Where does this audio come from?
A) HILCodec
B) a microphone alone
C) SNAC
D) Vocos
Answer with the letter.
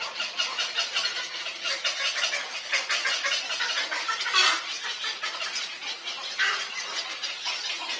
B